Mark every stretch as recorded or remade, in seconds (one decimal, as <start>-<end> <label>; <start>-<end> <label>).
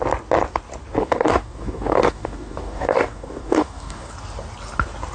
0.0-1.0 recorded; 1.0-4.1 remade; 4.1-5.1 recorded